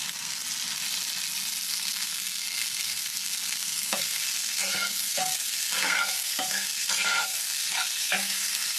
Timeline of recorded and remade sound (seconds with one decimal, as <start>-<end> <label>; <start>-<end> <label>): 0.0-0.4 remade; 0.4-1.7 recorded; 1.7-8.8 remade